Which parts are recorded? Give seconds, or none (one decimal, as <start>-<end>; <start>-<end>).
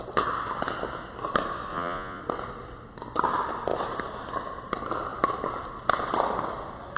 0.0-1.7; 2.2-7.0